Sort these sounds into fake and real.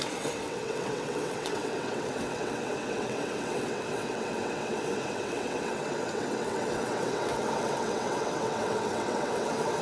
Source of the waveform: fake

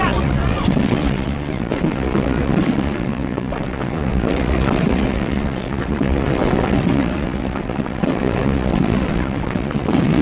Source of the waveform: fake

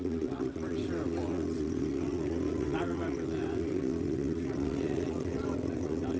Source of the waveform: fake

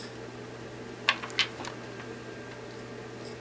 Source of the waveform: real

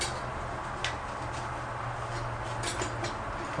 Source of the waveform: real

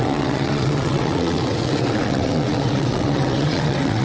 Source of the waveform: fake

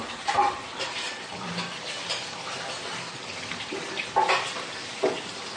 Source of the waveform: real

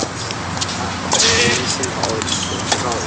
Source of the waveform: real